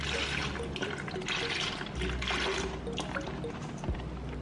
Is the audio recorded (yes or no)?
yes